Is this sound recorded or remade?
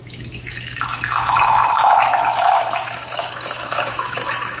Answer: remade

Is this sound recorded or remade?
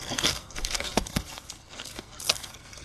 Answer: remade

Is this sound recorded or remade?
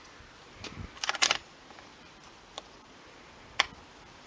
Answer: remade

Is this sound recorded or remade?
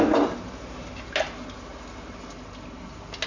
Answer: recorded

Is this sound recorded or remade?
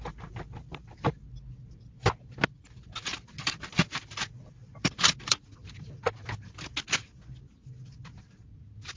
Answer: recorded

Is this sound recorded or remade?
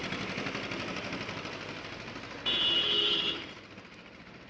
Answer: remade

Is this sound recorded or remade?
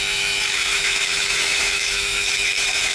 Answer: remade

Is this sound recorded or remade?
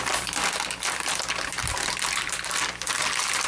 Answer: recorded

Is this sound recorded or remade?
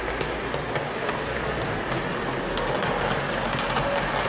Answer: recorded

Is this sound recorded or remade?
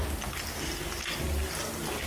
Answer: recorded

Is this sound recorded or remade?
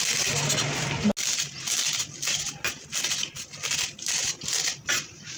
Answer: recorded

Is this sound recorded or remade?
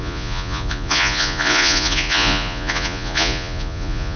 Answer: remade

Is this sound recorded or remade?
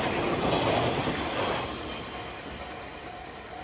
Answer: recorded